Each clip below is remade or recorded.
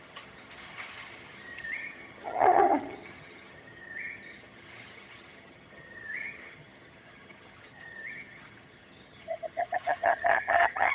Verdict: remade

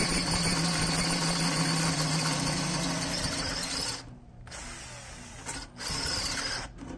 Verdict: recorded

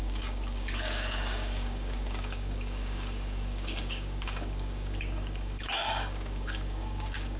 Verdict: remade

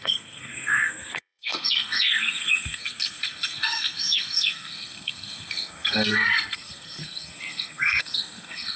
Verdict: remade